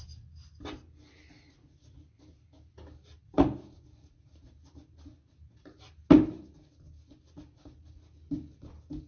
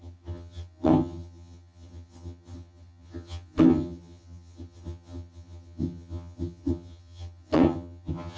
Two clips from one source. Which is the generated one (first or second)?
second